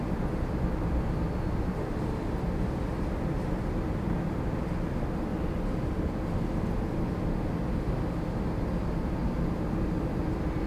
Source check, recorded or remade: recorded